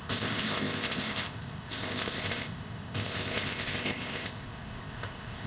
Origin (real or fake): fake